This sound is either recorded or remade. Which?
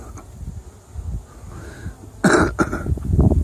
recorded